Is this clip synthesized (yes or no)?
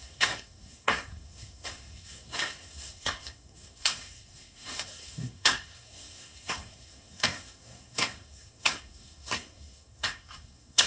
yes